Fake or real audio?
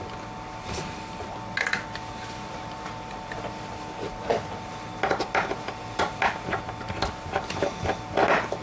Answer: real